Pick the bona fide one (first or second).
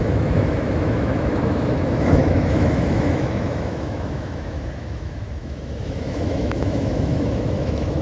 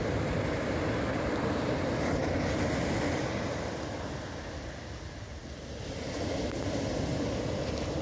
second